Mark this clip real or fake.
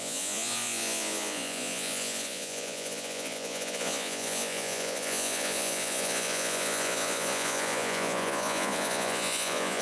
fake